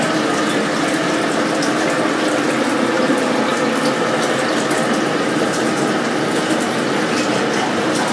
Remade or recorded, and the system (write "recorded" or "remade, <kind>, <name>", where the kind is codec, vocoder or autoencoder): recorded